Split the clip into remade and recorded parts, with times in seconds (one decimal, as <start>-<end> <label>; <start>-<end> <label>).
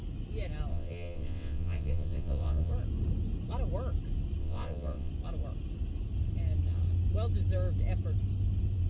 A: 0.0-0.7 recorded; 0.7-2.7 remade; 2.7-4.4 recorded; 4.4-5.1 remade; 5.1-8.9 recorded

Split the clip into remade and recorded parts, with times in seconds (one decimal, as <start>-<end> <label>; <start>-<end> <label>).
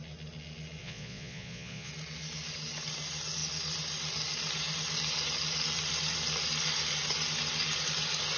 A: 0.0-0.8 recorded; 0.8-1.9 remade; 1.9-8.4 recorded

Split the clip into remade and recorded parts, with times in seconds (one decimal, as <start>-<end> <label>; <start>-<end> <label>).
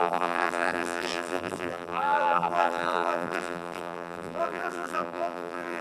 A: 0.0-5.8 remade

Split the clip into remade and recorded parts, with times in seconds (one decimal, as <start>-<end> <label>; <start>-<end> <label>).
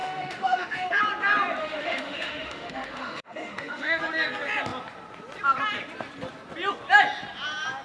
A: 0.0-1.0 remade; 1.0-1.6 recorded; 1.6-4.0 remade; 4.0-7.8 recorded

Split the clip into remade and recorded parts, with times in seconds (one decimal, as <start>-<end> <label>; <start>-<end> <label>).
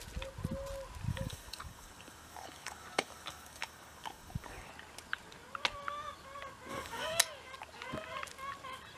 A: 0.0-1.1 recorded; 1.1-4.7 remade; 4.7-6.7 recorded; 6.7-7.2 remade; 7.2-9.0 recorded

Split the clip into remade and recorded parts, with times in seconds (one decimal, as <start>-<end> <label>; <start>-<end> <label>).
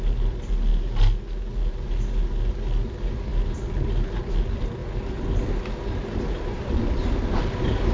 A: 0.0-7.9 recorded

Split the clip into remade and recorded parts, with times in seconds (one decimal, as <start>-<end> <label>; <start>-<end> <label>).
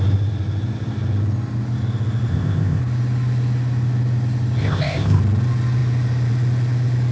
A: 0.0-2.3 recorded; 2.3-2.8 remade; 2.8-4.6 recorded; 4.6-5.2 remade; 5.2-7.1 recorded